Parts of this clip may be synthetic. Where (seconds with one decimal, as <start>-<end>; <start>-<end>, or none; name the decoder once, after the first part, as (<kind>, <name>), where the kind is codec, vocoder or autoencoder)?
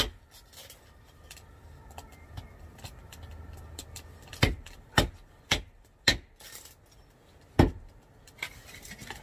none